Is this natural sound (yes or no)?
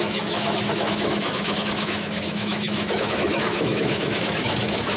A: no